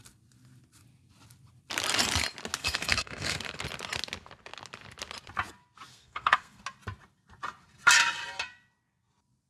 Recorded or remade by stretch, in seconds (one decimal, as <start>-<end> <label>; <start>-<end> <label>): 0.0-2.6 recorded; 2.6-3.4 remade; 3.4-5.9 recorded; 5.9-6.6 remade; 6.6-9.5 recorded